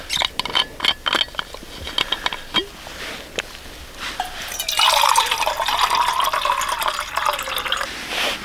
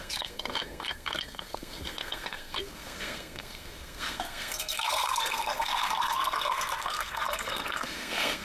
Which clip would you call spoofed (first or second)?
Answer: second